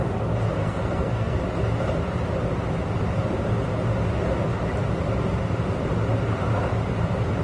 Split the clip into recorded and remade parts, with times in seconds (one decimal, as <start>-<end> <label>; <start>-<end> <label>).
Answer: 0.0-0.6 recorded; 0.6-1.4 remade; 1.4-7.4 recorded